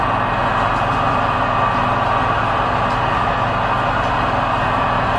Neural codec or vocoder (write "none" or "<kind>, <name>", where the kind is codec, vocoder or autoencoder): none